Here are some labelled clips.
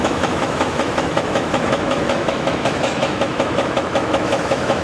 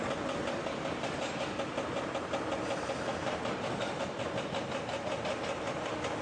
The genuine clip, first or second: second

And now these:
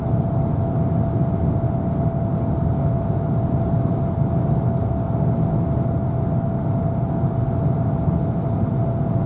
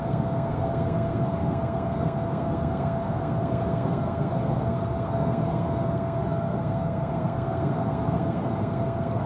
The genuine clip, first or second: first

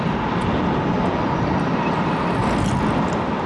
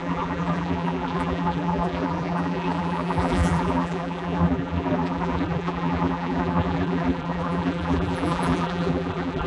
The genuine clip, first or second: first